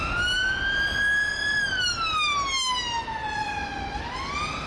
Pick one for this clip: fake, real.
real